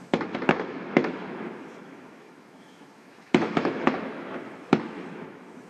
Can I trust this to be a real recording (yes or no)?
no